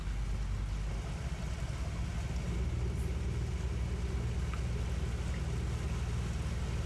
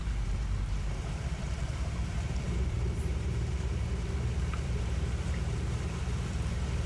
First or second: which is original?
first